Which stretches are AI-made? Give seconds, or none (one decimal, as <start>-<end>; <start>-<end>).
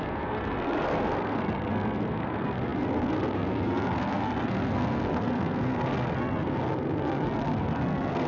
0.0-8.3